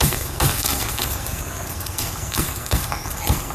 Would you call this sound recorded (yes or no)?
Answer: no